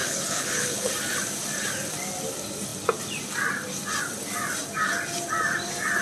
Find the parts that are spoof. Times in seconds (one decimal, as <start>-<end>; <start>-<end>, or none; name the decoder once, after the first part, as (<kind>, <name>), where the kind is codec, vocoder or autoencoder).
0.0-0.9 (codec, HILCodec)